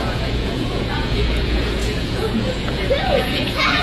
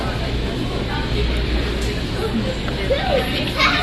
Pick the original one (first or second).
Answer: second